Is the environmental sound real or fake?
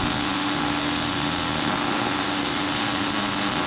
real